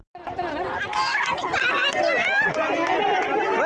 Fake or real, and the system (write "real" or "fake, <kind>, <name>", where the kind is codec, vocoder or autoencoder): real